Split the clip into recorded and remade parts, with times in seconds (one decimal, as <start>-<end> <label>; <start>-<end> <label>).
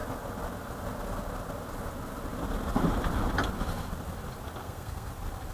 0.0-4.6 recorded; 4.6-5.1 remade; 5.1-5.5 recorded